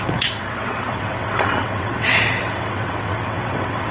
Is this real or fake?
fake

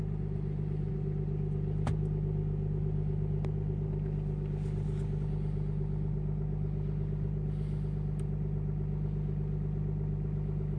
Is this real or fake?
real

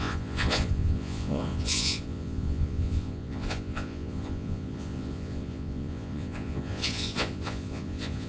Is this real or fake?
fake